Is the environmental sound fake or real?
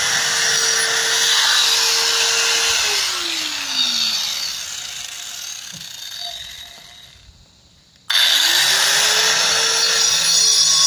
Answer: real